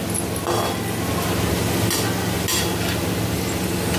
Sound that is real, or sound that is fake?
real